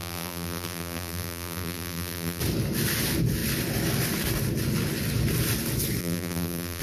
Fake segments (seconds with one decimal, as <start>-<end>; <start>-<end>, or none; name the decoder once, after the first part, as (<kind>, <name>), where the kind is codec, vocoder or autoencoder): 0.0-2.4 (vocoder, BigVGAN v2); 6.0-6.8